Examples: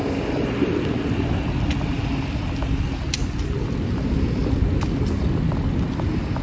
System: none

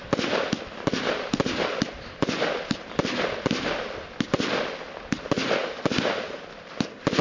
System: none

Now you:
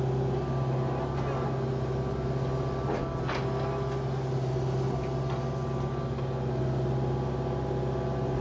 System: none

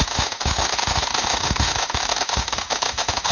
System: autoencoder, DAC-VAE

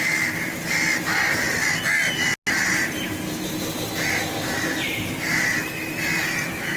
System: none